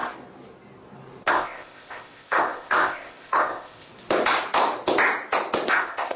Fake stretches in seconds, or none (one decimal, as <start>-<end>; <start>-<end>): 1.3-3.9; 5.7-6.2